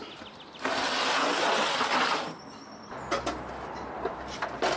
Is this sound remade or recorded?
recorded